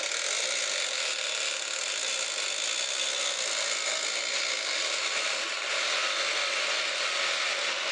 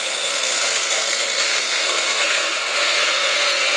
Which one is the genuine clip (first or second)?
first